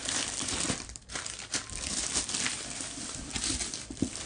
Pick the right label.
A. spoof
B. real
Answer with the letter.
A